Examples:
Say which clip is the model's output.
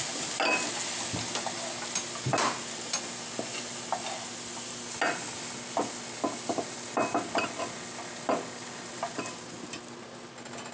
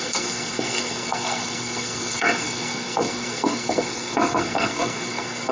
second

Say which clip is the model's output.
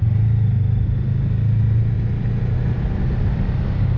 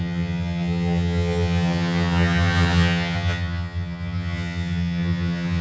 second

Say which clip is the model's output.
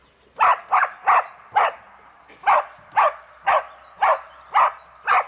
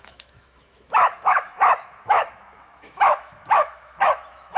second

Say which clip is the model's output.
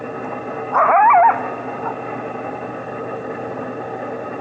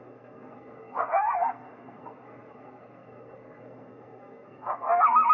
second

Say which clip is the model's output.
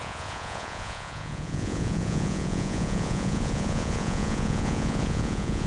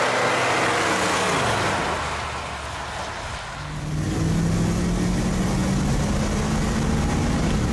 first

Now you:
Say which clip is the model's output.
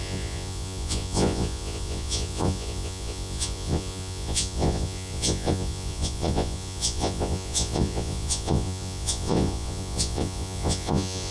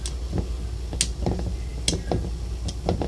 first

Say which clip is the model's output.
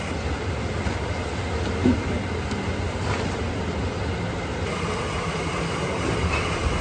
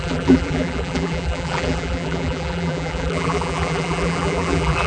second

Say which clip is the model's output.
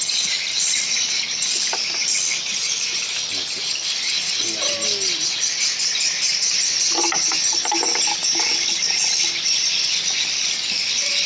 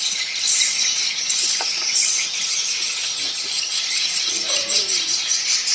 second